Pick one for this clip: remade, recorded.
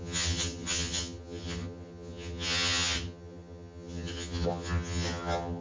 remade